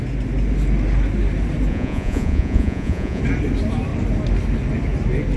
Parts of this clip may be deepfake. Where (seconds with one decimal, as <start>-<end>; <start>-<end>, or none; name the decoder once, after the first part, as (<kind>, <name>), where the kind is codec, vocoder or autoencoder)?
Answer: 1.7-3.2 (vocoder, Vocos)